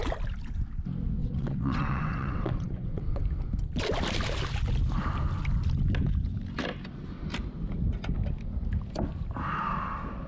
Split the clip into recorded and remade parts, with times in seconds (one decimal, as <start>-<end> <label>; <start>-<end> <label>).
0.0-1.2 recorded; 1.2-3.2 remade; 3.2-10.3 recorded